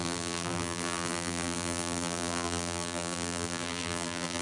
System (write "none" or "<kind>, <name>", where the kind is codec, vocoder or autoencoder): vocoder, BigVGAN v2